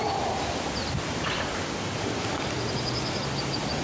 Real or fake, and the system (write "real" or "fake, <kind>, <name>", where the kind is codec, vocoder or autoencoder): fake, vocoder, BigVGAN v2